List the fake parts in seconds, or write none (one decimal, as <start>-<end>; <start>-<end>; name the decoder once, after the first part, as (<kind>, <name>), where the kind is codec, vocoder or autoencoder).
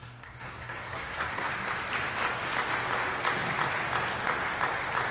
0.0-1.5 (codec, SNAC)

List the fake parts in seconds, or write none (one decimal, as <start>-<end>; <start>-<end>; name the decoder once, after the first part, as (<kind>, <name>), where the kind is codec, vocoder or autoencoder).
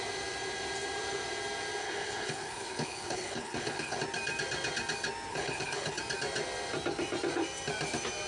1.8-4.0 (codec, HILCodec); 5.3-6.0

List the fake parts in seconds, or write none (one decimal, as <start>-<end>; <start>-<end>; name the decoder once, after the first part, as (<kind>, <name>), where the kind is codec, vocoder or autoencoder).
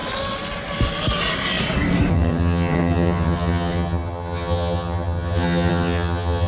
2.1-6.5 (vocoder, HiFi-GAN)